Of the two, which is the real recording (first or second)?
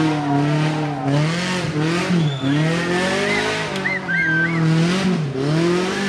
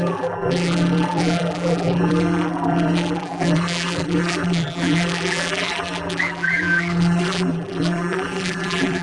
first